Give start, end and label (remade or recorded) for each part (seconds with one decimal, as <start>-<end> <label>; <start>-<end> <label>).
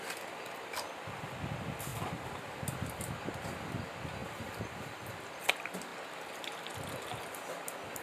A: 0.0-8.0 recorded